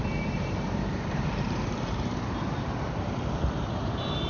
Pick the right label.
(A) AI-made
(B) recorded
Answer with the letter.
A